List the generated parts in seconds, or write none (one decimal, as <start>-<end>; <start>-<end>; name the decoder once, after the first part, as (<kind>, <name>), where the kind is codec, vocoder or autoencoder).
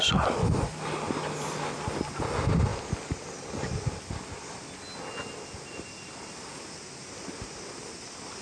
none